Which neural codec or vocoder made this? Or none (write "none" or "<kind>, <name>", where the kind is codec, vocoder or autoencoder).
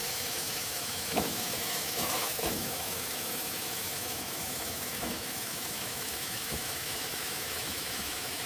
autoencoder, DAC-VAE